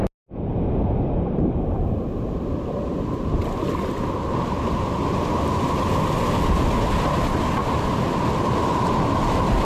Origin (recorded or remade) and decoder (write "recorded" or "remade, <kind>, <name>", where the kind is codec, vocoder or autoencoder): recorded